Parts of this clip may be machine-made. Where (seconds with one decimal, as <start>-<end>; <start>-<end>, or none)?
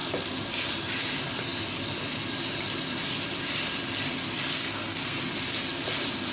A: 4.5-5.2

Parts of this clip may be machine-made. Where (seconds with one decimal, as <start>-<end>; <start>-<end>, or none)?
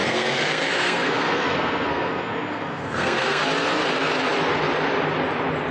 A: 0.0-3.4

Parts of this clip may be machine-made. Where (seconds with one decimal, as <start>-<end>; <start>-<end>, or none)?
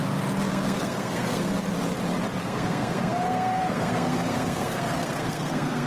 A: 0.5-1.5; 2.4-5.9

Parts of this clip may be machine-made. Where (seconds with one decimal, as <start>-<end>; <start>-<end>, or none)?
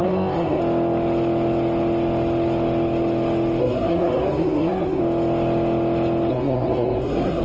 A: 0.0-0.6; 3.6-5.0; 6.3-7.4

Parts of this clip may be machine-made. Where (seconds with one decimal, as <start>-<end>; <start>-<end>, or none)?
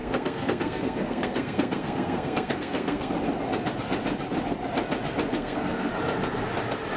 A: 0.0-3.1; 5.3-5.9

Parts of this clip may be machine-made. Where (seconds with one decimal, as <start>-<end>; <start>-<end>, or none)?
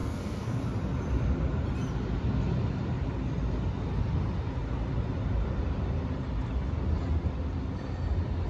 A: 0.0-0.6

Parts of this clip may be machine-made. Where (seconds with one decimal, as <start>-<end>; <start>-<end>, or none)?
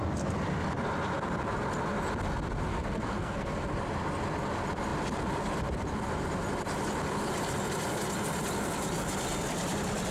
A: 2.7-3.5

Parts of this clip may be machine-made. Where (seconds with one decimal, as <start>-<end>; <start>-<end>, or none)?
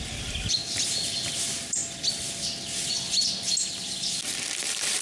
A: none